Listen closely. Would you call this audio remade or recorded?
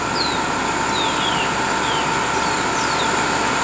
recorded